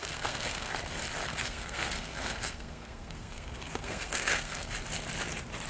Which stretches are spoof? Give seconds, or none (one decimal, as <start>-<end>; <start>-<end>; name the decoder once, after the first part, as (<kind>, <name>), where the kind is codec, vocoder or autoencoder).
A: 0.0-0.7 (codec, SNAC); 1.3-4.7